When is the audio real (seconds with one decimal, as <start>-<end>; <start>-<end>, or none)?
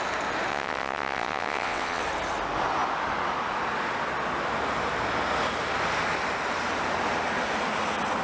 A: 0.0-0.5; 2.0-8.2